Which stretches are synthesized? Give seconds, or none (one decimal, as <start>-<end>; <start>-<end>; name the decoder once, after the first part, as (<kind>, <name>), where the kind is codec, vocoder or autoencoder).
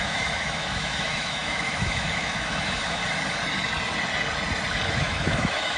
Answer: 0.0-3.0 (autoencoder, DAC-VAE); 4.9-5.8